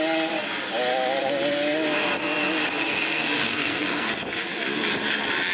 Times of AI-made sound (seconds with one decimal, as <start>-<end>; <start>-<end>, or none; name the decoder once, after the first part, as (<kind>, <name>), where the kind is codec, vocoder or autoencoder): 2.8-4.1 (codec, SNAC)